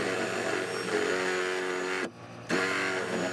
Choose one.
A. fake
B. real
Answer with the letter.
B